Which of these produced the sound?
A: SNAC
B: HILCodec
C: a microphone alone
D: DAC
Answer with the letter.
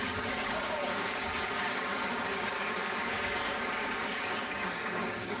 D